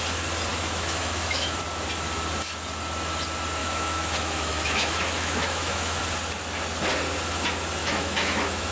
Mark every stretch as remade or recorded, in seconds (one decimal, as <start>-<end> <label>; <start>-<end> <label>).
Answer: 0.0-0.5 recorded; 0.5-1.6 remade; 1.6-3.6 recorded; 3.6-6.0 remade; 6.0-7.8 recorded; 7.8-8.7 remade